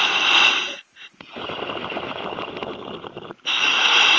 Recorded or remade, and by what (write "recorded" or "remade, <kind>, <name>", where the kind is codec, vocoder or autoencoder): recorded